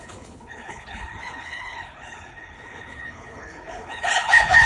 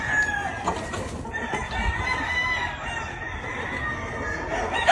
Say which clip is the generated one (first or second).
first